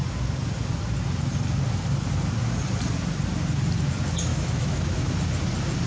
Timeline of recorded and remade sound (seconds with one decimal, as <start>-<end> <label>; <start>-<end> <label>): 0.0-4.3 recorded; 4.3-5.1 remade; 5.1-5.9 recorded